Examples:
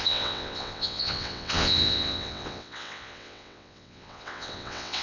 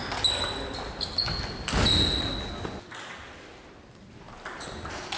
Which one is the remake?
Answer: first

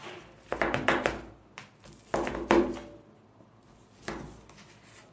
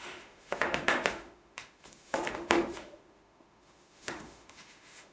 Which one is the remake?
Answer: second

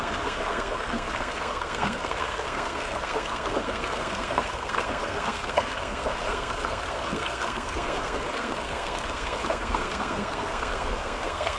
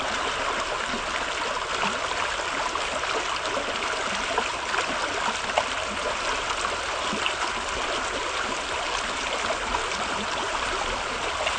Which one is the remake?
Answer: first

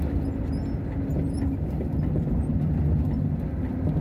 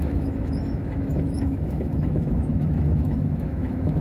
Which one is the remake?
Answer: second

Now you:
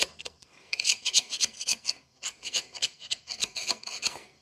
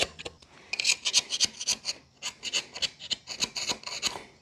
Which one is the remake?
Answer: first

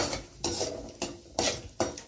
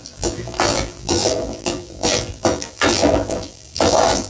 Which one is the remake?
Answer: second